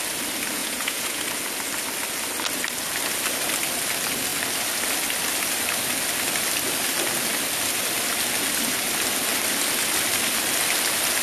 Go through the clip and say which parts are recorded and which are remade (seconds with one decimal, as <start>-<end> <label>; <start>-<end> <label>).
0.0-0.6 recorded; 0.6-1.2 remade; 1.2-11.2 recorded